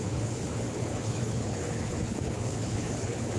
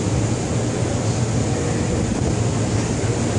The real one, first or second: second